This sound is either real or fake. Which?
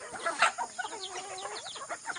real